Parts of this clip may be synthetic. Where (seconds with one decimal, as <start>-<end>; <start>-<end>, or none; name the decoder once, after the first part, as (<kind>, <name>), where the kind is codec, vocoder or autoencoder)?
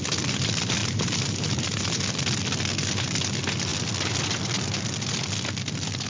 0.8-1.8 (vocoder, BigVGAN v2)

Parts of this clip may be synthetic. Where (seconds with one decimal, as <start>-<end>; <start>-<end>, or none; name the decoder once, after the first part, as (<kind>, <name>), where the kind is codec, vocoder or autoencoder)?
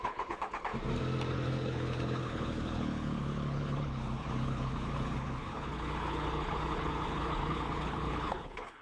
0.0-0.7 (codec, HILCodec); 1.3-8.8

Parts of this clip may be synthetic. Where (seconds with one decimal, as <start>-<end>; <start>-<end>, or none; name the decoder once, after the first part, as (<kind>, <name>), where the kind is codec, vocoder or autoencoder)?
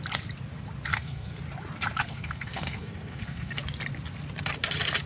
0.9-1.4 (codec, SNAC); 2.0-3.6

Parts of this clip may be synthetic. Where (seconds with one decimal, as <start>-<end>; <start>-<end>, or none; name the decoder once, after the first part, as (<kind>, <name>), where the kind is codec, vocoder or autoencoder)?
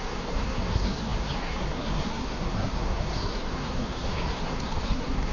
0.0-5.3 (codec, SNAC)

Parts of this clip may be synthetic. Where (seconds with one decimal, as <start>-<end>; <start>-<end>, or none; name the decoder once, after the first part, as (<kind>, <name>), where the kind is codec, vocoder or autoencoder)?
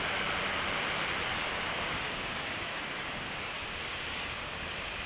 1.3-4.4 (codec, DAC)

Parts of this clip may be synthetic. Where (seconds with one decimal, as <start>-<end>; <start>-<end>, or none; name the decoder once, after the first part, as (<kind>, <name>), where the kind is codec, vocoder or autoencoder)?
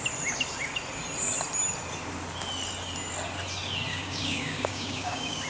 3.9-5.5 (codec, DAC)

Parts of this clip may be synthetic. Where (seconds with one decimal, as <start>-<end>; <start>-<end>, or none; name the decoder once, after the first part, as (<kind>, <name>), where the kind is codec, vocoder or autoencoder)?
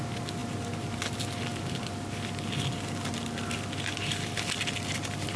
none